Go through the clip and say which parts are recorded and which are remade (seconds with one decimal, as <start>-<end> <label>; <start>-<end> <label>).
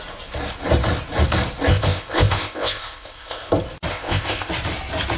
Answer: 0.0-1.7 recorded; 1.7-3.5 remade; 3.5-3.9 recorded; 3.9-4.5 remade; 4.5-5.2 recorded